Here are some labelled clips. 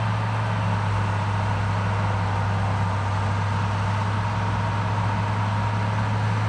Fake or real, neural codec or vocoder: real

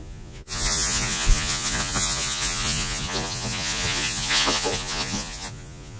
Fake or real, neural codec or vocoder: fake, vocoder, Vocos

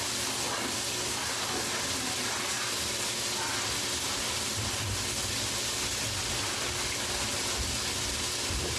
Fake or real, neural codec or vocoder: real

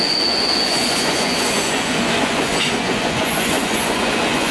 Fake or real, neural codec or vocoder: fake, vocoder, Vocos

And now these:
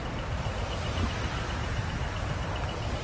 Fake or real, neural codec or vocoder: real